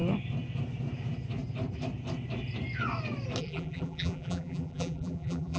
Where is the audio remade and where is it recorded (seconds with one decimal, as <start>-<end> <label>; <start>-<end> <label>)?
0.0-3.4 recorded; 3.4-5.6 remade